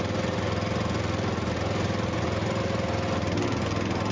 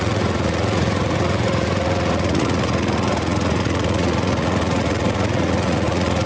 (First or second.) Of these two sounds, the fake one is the second